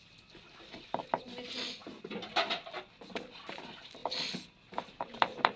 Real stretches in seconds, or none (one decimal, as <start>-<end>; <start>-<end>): 0.0-5.6